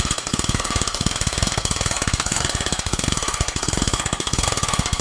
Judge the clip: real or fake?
fake